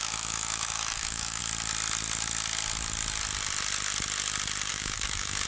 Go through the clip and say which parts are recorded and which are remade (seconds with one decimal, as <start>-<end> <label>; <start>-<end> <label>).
0.0-1.4 remade; 1.4-4.7 recorded; 4.7-5.5 remade